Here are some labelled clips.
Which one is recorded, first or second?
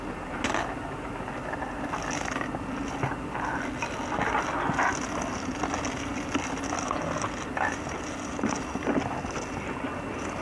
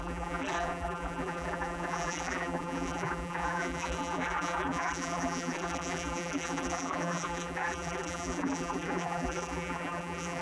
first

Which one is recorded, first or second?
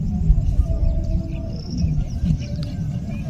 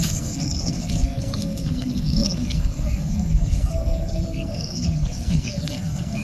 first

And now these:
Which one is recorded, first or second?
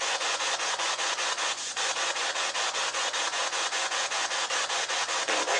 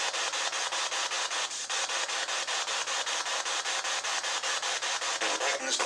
second